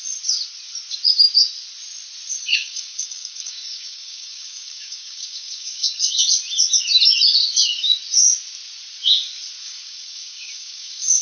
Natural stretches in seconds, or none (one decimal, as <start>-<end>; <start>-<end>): 0.0-2.4; 6.2-9.6